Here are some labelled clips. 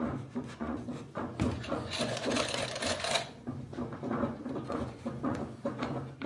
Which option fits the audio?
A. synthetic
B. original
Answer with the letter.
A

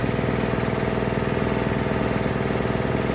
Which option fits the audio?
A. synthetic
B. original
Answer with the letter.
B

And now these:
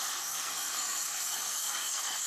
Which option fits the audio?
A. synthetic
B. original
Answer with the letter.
A